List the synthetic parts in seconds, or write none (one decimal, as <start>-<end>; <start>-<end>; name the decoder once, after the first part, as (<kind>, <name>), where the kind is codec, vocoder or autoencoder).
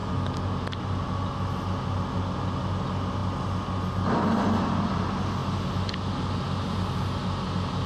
none